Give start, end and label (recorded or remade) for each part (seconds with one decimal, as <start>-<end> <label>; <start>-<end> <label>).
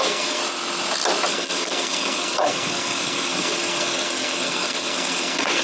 0.0-0.4 remade; 0.4-1.3 recorded; 1.3-5.6 remade